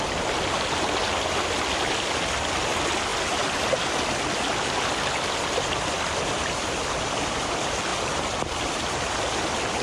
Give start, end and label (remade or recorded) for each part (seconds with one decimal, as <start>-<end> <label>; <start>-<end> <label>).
0.0-9.8 recorded